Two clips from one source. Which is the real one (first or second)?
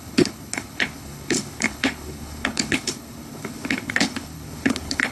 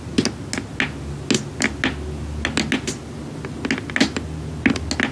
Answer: second